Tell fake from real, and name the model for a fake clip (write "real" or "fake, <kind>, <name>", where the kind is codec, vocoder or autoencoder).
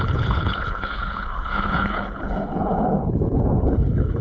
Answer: fake, codec, HILCodec